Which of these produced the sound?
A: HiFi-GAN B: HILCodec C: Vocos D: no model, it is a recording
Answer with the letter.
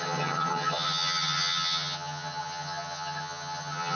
A